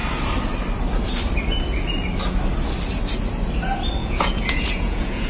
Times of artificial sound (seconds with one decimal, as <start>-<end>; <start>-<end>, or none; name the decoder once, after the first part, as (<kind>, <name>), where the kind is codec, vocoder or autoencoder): 4.0-5.3 (vocoder, Vocos)